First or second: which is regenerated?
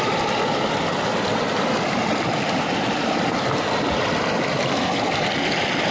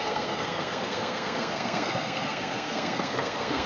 second